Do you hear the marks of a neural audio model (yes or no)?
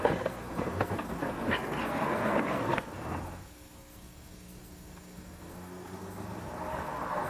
yes